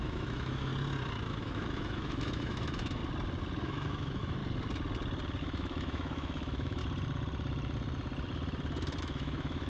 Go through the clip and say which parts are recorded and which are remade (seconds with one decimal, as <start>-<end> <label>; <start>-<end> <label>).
0.0-0.7 remade; 0.7-1.4 recorded; 1.4-3.0 remade; 3.0-3.6 recorded; 3.6-4.4 remade; 4.4-5.4 recorded; 5.4-6.8 remade; 6.8-9.0 recorded; 9.0-9.7 remade